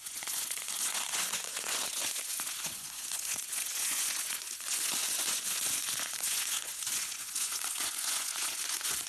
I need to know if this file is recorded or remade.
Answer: remade